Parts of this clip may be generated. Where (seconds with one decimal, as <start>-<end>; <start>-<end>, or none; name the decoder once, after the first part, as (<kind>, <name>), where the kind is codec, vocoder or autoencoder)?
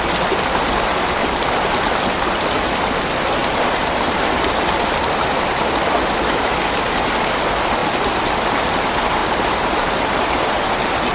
0.9-1.5 (vocoder, BigVGAN v2); 3.4-4.2; 7.8-8.3; 9.2-10.4